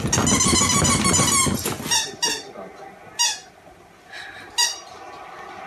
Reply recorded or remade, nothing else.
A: recorded